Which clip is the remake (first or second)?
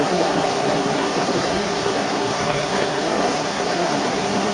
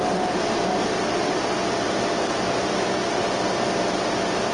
first